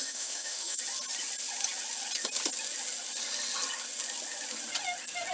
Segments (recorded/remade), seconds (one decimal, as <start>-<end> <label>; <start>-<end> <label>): 0.0-0.8 remade; 0.8-5.3 recorded